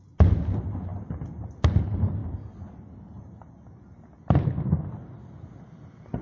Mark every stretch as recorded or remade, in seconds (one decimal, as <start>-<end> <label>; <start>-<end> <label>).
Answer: 0.0-6.2 recorded